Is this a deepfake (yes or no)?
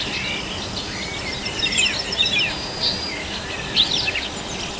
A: no